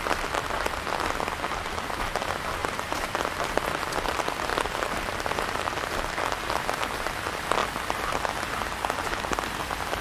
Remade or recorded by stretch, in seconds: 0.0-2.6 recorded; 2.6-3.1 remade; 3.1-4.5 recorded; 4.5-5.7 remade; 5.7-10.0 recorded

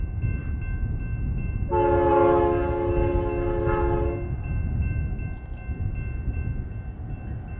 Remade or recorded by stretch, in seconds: 0.0-7.6 recorded

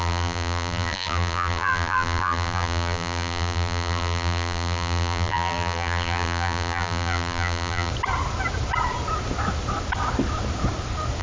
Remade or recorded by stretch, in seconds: 0.0-7.9 remade; 7.9-11.2 recorded

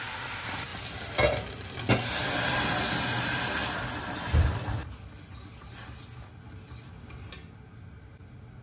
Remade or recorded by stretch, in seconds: 0.0-8.6 recorded

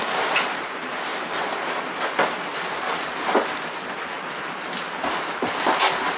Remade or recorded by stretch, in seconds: 0.0-1.1 remade; 1.1-4.8 recorded; 4.8-6.2 remade

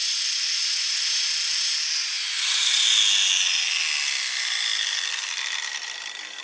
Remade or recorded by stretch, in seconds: 0.0-1.0 remade; 1.0-2.3 recorded; 2.3-2.9 remade; 2.9-6.4 recorded

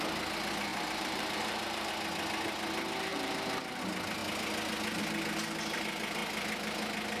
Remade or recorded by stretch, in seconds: 0.0-0.7 recorded; 0.7-1.9 remade; 1.9-3.1 recorded; 3.1-3.8 remade; 3.8-7.2 recorded

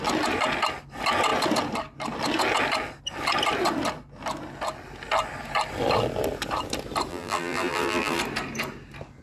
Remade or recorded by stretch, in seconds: 0.0-7.1 recorded; 7.1-8.2 remade; 8.2-9.2 recorded